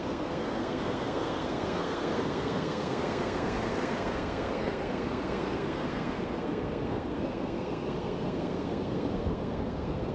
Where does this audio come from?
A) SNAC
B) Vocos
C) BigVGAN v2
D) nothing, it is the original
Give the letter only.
A